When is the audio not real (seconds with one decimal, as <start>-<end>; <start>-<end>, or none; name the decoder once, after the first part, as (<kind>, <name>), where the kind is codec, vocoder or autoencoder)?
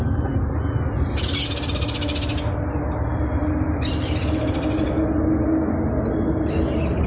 none